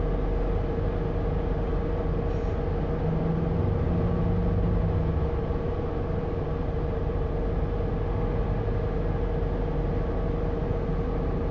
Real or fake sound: real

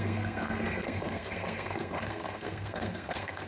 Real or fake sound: fake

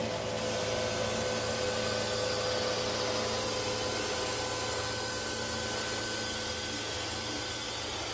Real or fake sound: real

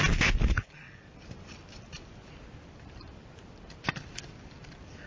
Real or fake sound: real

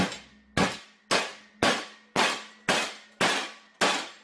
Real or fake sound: real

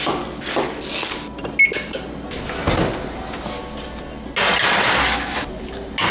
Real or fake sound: real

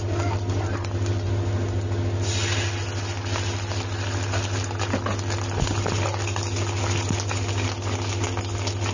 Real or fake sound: fake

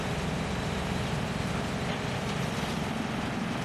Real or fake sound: real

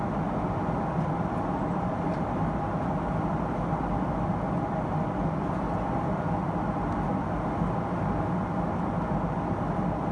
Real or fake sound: real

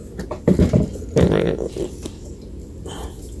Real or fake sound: real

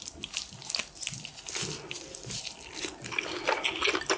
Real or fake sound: real